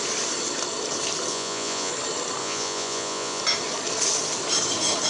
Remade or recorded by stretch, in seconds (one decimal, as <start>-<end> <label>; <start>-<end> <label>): 0.0-1.3 recorded; 1.3-1.9 remade; 1.9-2.4 recorded; 2.4-3.4 remade; 3.4-5.1 recorded